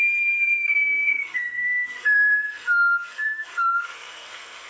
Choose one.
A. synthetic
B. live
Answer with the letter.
A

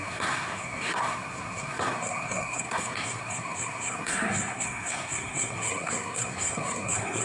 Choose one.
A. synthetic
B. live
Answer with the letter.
A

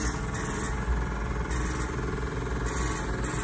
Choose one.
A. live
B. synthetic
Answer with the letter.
A